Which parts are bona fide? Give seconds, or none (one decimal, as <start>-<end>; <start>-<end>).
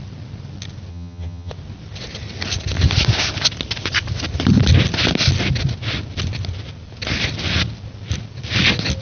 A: 0.0-0.9; 1.5-9.0